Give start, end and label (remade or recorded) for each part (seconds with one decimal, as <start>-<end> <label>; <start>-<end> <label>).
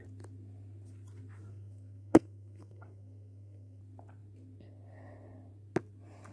0.0-1.5 recorded; 1.5-3.8 remade; 3.8-6.3 recorded